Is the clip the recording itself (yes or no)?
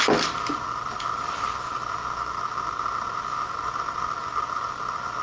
yes